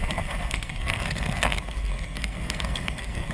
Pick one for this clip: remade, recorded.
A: remade